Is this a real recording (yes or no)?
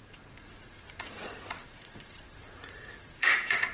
no